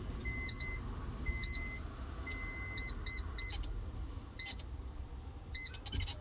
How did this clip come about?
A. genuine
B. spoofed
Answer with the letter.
A